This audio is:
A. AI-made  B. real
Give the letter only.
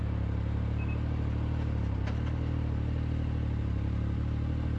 B